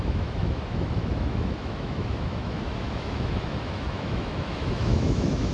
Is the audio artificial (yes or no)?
yes